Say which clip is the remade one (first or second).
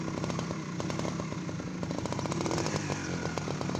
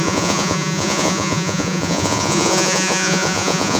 second